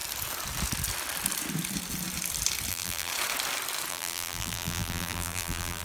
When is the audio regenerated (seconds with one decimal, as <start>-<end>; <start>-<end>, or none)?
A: 2.7-3.1; 3.9-5.8